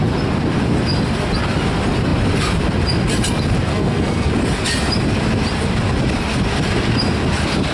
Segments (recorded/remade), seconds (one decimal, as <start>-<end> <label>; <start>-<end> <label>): 0.0-3.7 recorded; 3.7-4.3 remade; 4.3-7.7 recorded